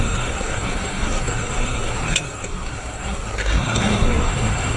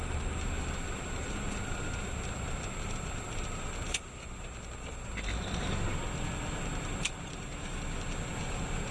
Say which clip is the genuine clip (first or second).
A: second